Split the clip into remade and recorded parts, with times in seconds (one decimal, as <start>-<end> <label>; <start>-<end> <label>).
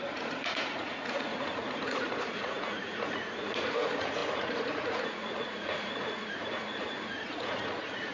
0.0-8.1 remade